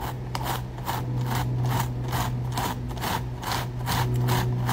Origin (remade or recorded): recorded